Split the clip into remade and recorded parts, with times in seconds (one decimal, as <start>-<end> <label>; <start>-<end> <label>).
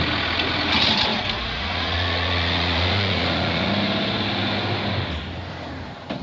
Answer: 0.0-1.1 recorded; 1.1-3.7 remade; 3.7-6.2 recorded